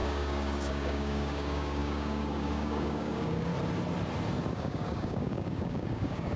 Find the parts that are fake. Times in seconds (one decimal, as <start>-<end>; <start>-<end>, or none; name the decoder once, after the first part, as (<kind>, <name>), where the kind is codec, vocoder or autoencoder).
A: 0.0-3.5 (codec, DAC); 4.5-6.4